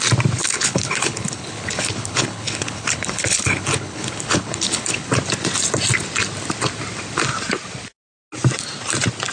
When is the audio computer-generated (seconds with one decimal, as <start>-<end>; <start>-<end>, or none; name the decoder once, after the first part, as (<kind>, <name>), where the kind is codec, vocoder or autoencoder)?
0.4-5.1 (codec, HILCodec)